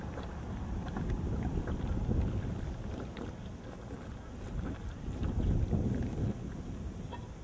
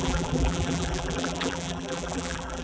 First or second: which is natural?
first